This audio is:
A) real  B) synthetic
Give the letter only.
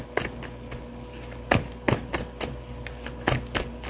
A